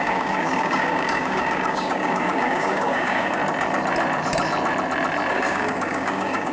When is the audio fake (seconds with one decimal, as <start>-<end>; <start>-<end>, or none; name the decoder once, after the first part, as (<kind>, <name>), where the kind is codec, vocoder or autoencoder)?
0.0-3.4 (codec, DAC); 5.3-6.5